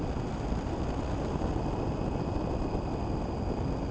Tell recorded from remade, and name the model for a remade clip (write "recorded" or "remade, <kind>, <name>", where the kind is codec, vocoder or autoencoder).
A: recorded